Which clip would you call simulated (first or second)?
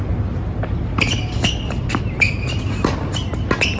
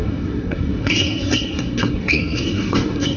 second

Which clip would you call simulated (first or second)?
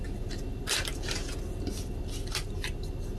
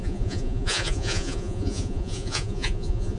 second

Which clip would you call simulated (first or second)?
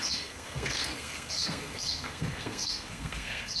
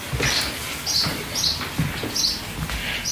first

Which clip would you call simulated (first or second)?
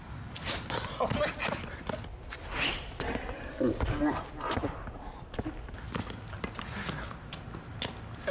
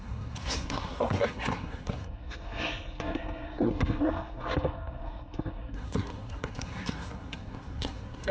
second